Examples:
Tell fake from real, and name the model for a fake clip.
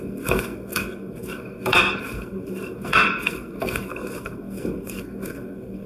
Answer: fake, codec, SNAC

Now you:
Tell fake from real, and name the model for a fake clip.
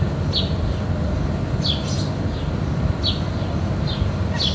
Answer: real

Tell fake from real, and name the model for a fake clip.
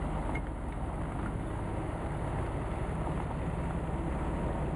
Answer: real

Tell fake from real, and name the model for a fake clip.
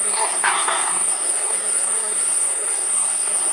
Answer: fake, codec, SNAC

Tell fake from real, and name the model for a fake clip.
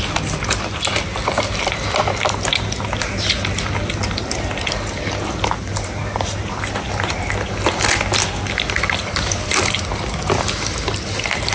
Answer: real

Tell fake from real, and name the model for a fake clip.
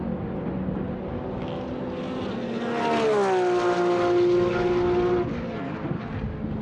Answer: real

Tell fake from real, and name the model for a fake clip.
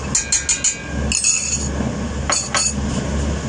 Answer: real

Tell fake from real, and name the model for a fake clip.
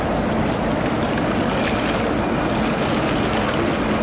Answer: real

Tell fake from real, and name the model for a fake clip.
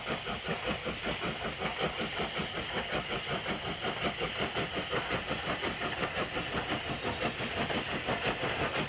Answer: real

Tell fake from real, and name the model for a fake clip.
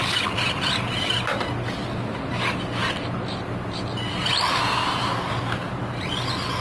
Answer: real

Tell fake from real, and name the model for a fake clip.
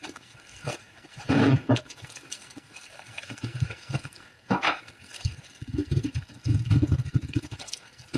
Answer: fake, codec, SNAC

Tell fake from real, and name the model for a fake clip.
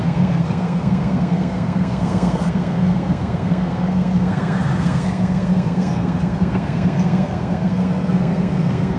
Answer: fake, codec, SNAC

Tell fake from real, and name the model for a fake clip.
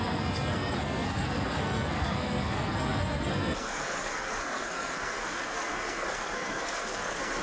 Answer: fake, codec, SNAC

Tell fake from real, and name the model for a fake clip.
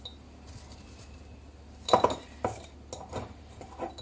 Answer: real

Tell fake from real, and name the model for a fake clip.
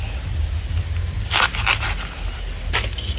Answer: real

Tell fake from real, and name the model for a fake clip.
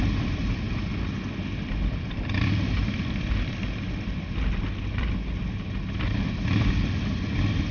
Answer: real